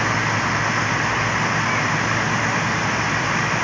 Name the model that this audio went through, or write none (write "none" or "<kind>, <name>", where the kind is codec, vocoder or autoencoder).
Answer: none